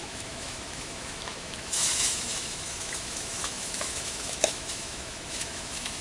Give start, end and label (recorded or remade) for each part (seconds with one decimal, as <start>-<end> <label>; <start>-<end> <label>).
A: 0.0-6.0 remade